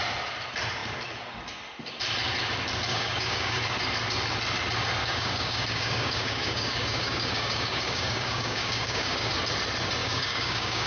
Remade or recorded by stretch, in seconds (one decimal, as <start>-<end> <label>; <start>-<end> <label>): 0.0-2.9 recorded; 2.9-3.6 remade; 3.6-5.0 recorded; 5.0-9.3 remade; 9.3-10.0 recorded; 10.0-10.9 remade